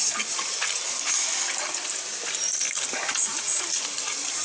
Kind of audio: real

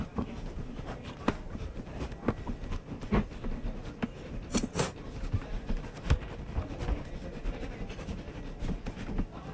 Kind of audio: real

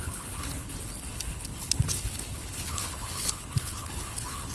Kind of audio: fake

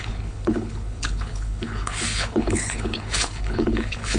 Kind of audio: fake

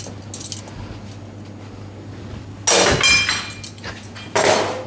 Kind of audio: real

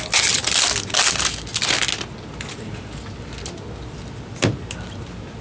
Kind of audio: real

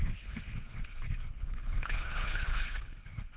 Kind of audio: fake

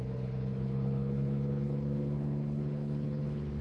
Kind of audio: fake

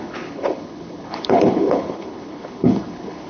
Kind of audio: fake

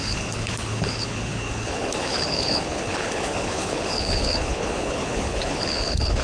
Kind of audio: fake